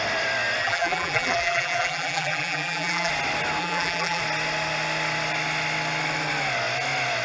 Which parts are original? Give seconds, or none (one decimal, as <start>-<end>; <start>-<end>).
0.0-0.6; 3.1-3.6; 4.2-7.2